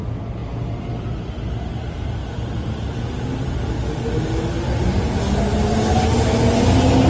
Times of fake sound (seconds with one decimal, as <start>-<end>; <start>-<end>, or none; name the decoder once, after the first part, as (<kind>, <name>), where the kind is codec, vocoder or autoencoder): none